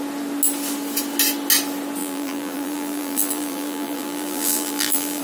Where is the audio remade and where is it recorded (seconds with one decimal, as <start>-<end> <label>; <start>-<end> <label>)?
0.0-2.0 recorded; 2.0-5.2 remade

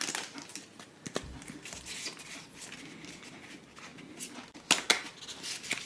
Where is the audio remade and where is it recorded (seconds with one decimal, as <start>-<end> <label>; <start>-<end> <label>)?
0.0-5.9 recorded

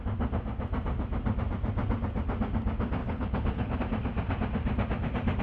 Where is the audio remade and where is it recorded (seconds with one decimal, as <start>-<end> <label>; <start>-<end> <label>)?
0.0-3.0 recorded; 3.0-3.8 remade; 3.8-5.4 recorded

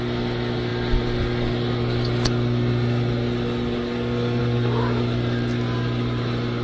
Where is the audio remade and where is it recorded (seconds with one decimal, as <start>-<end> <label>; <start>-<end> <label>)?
0.0-6.6 recorded